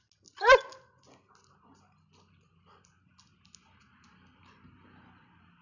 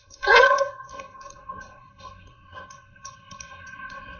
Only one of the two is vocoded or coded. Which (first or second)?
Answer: second